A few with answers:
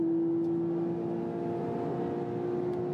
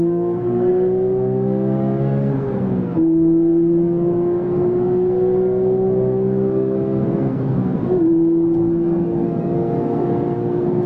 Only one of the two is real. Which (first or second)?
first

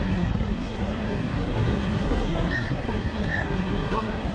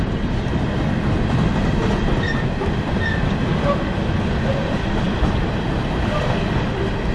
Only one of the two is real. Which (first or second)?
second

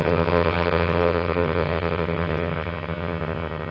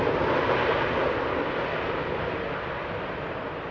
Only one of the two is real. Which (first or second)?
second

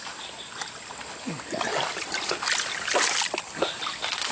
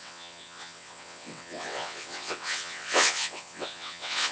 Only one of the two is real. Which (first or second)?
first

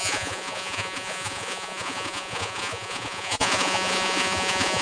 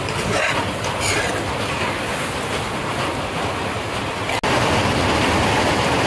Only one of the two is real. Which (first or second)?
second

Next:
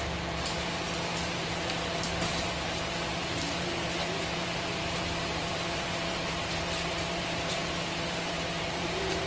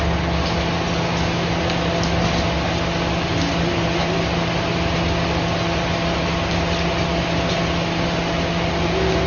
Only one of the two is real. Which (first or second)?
second